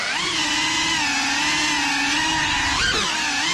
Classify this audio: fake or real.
real